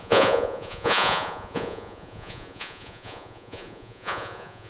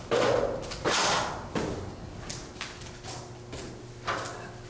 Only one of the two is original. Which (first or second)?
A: second